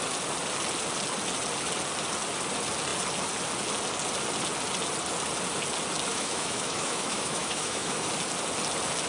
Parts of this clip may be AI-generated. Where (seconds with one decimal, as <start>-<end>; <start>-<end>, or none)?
6.1-8.1